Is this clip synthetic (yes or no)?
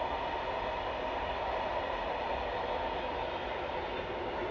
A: no